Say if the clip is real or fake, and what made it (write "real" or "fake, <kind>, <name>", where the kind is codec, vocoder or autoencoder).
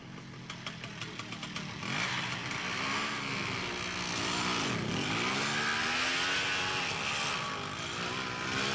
real